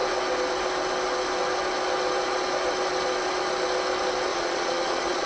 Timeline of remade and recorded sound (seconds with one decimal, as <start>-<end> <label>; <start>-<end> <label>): 0.0-4.3 recorded; 4.3-5.3 remade